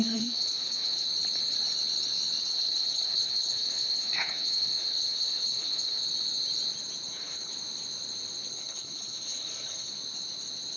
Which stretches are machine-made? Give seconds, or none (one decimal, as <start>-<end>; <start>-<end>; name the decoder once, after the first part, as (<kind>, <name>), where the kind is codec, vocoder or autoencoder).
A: 0.0-1.1 (codec, HILCodec); 2.4-6.0; 7.1-7.5; 8.5-9.9